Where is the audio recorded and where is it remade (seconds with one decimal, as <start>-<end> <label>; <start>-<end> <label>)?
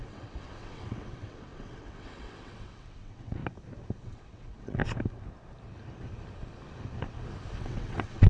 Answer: 0.0-3.4 remade; 3.4-4.0 recorded; 4.0-4.8 remade; 4.8-7.6 recorded; 7.6-8.3 remade